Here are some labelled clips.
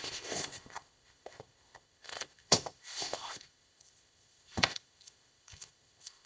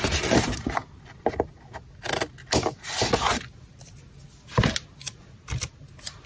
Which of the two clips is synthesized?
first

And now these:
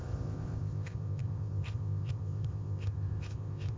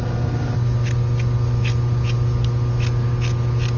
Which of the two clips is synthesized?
first